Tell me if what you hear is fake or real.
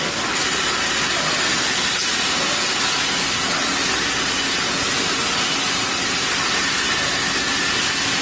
real